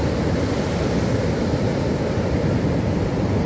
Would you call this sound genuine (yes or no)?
yes